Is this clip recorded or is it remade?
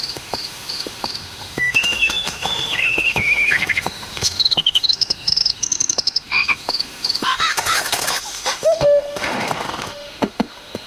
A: remade